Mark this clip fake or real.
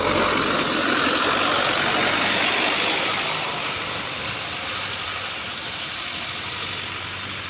real